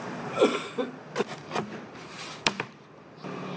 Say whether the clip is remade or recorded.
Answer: remade